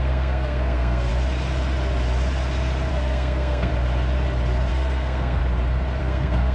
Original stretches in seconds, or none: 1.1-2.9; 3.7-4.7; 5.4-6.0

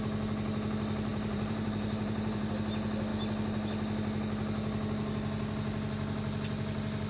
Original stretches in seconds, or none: 0.0-1.1; 2.5-7.1

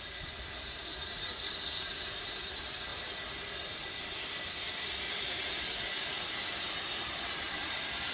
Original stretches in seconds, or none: 0.8-1.5; 2.9-6.9

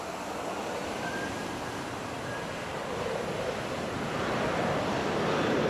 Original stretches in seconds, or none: 0.0-0.8; 4.2-5.7

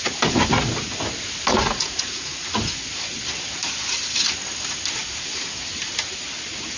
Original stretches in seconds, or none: 0.0-1.5; 2.6-6.8

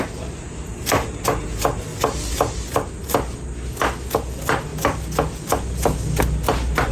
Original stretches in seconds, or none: 0.0-6.9

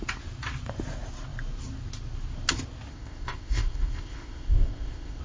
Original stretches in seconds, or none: 0.0-2.9